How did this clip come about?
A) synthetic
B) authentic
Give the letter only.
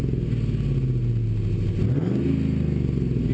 B